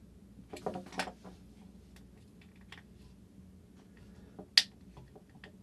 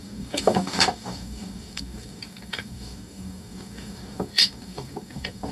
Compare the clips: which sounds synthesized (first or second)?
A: second